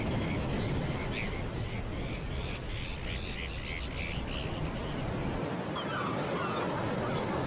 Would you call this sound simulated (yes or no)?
no